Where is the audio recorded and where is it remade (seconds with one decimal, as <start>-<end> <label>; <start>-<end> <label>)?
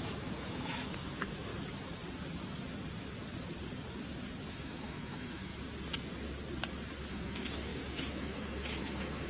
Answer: 0.0-1.5 remade; 1.5-4.5 recorded; 4.5-5.5 remade; 5.5-7.1 recorded; 7.1-9.3 remade